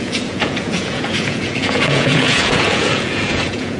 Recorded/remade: remade